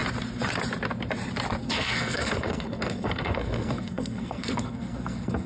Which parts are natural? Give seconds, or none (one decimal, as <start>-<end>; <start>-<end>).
0.0-1.6